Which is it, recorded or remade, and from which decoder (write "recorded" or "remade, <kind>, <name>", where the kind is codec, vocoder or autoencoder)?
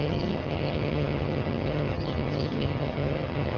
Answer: remade, vocoder, HiFi-GAN